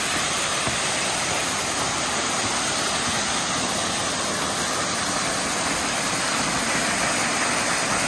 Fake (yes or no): no